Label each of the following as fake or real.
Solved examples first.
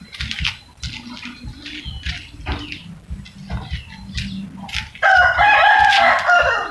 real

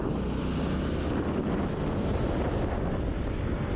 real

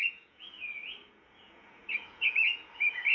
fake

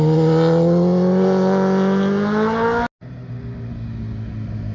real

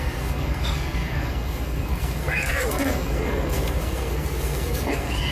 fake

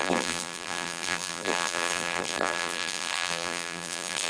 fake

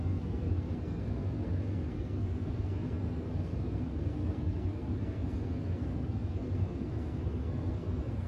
fake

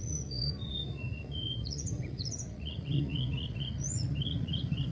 fake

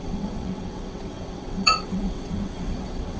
fake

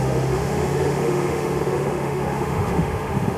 fake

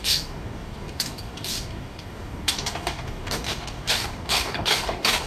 fake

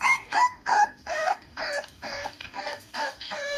fake